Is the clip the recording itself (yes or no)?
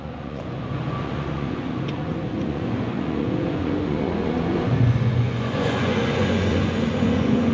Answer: no